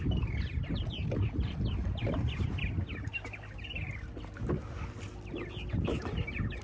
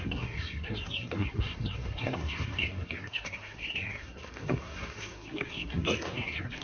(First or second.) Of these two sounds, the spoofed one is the second